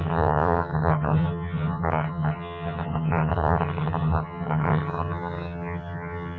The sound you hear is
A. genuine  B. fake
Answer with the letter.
B